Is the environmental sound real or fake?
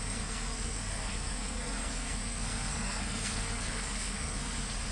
fake